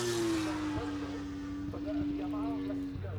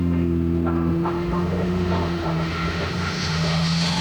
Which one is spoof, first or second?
second